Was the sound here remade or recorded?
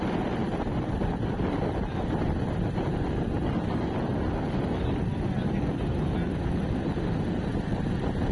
recorded